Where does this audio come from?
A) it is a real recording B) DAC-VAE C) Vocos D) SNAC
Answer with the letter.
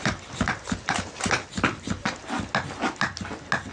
A